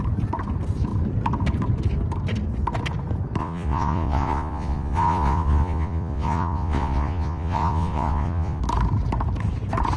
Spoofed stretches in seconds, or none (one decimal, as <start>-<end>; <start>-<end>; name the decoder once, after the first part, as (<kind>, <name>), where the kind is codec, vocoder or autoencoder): 3.4-8.6 (vocoder, Vocos)